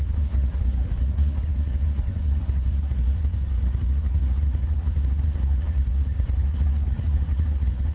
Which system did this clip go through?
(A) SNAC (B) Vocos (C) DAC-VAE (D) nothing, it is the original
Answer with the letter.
B